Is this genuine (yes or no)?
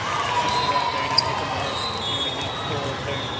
yes